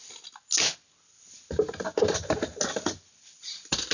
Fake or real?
real